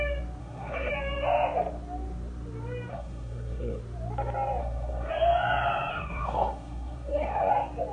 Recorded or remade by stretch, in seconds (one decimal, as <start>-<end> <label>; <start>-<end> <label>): 0.0-0.4 recorded; 0.4-0.9 remade; 0.9-2.9 recorded; 2.9-3.8 remade; 3.8-4.6 recorded; 4.6-5.1 remade; 5.1-5.9 recorded; 5.9-7.5 remade; 7.5-7.9 recorded